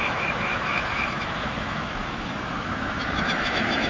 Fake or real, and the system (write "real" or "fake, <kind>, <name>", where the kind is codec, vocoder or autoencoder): fake, autoencoder, DAC-VAE